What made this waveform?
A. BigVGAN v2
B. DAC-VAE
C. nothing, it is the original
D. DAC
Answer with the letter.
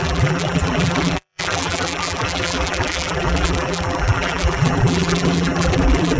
A